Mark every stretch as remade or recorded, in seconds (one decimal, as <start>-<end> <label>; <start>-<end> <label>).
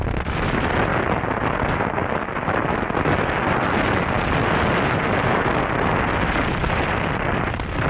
0.0-7.9 recorded